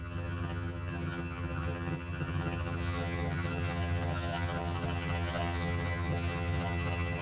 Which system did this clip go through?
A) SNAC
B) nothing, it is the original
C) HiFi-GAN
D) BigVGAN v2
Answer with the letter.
C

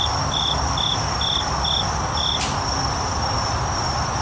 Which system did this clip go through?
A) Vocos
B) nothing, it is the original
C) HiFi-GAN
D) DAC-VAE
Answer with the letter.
B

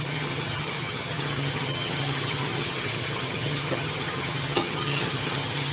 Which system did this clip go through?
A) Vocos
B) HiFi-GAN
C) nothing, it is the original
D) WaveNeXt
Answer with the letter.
B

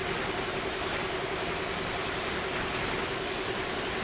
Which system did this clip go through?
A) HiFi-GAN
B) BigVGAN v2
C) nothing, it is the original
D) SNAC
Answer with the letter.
C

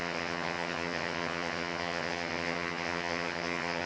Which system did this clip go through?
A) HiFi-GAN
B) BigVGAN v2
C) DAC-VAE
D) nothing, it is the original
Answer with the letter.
A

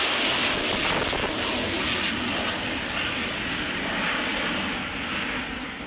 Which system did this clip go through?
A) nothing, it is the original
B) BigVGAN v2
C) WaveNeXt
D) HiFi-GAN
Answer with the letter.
A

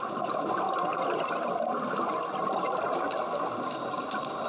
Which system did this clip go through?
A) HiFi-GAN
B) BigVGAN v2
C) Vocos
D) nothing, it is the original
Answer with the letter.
D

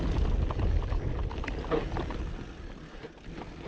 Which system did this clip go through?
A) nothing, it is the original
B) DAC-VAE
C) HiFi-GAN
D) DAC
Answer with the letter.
A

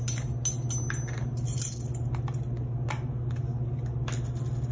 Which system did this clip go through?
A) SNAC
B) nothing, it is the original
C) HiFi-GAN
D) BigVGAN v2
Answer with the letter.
B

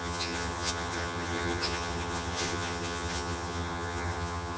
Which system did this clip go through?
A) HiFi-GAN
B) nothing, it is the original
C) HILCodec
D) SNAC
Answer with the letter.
A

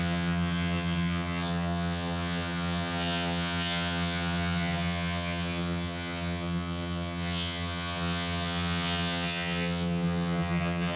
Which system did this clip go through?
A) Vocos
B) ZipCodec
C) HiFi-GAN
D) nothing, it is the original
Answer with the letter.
C